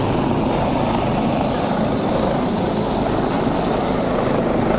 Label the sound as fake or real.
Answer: real